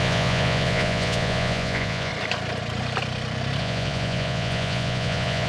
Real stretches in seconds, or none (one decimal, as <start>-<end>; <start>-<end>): 2.1-3.6